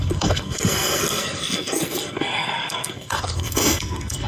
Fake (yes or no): yes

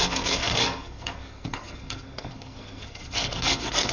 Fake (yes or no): yes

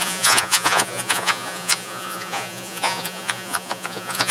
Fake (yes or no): yes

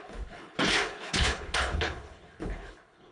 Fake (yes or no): yes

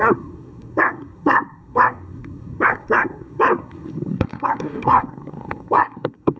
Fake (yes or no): yes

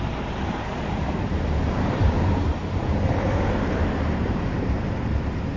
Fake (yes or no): yes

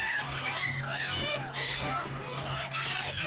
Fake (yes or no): yes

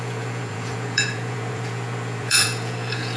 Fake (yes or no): yes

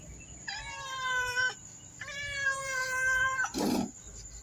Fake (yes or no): yes